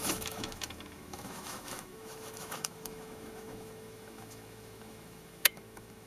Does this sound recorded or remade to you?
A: remade